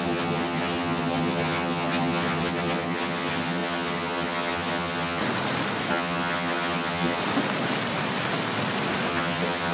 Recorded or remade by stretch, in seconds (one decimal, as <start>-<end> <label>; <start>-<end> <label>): 0.0-5.2 remade; 5.2-5.9 recorded; 5.9-7.2 remade; 7.2-9.1 recorded; 9.1-9.7 remade